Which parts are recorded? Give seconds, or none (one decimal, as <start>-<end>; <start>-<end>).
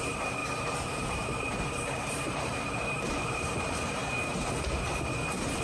4.0-5.6